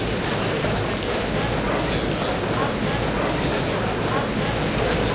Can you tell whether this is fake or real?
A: real